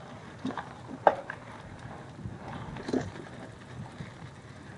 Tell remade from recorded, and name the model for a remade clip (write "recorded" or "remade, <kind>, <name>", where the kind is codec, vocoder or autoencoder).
recorded